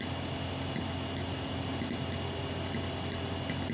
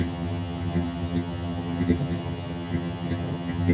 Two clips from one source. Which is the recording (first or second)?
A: first